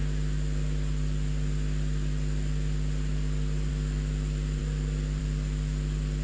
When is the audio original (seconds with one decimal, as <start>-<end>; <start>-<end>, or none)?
0.0-6.2